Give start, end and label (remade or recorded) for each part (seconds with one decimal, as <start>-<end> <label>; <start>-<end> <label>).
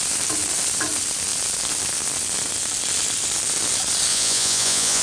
0.0-4.1 recorded; 4.1-5.0 remade